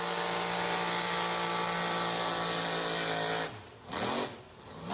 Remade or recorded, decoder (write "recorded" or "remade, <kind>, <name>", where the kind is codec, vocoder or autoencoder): recorded